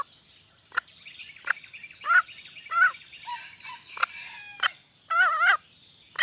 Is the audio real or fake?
real